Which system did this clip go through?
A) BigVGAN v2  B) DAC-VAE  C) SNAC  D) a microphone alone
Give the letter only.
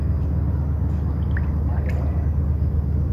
D